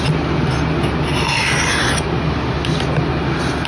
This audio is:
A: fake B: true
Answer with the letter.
B